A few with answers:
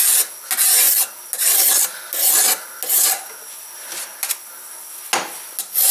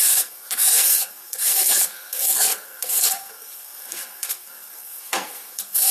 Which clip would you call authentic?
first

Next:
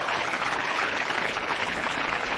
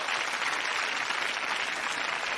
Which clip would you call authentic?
second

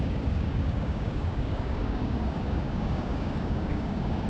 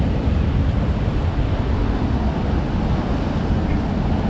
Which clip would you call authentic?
second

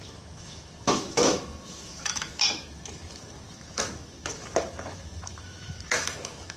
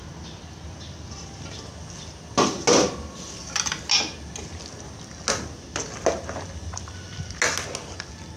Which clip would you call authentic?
second